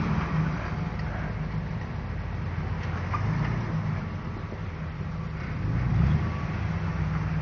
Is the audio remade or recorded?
recorded